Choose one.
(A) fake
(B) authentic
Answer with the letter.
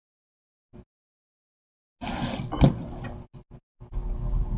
B